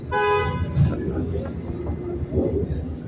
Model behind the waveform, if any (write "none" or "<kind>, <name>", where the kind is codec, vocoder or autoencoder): none